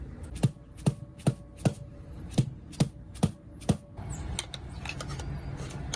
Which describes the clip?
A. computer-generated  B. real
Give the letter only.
B